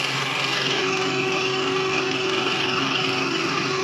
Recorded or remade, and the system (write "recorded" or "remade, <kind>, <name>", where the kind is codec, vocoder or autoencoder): remade, codec, DAC